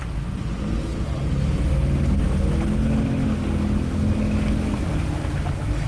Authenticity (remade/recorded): recorded